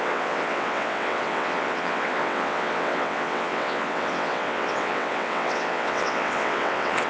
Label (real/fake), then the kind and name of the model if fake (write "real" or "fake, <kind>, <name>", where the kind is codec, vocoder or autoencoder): fake, vocoder, WaveNeXt